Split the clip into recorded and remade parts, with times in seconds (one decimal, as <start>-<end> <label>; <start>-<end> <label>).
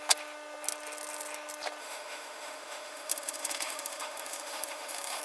0.0-1.8 recorded; 1.8-5.2 remade